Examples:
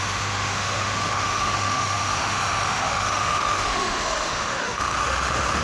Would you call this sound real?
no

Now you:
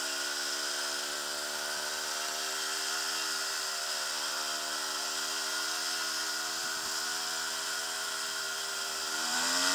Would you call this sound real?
no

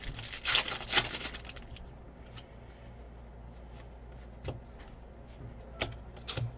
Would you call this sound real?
yes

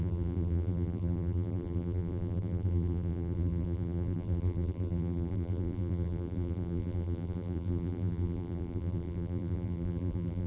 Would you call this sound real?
no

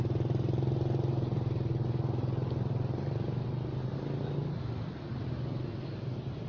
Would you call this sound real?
yes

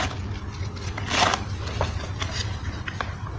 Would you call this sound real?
yes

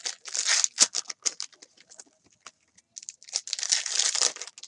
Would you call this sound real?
yes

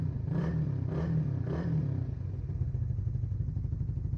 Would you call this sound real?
yes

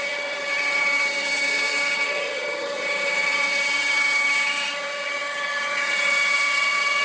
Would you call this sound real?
no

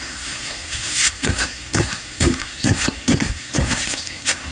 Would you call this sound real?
no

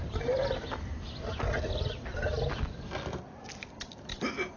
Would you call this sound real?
yes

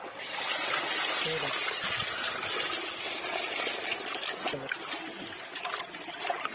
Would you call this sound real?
yes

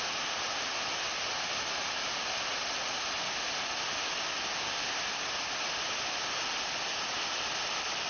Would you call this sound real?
yes